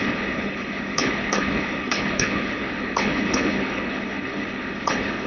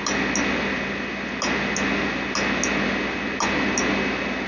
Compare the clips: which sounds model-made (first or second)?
first